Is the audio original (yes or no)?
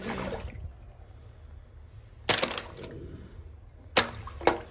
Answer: yes